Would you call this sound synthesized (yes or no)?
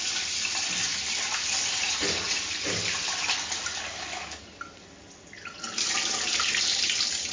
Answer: no